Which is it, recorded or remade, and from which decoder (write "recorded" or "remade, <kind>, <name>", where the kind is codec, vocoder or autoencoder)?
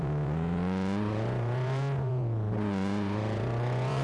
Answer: remade, vocoder, Vocos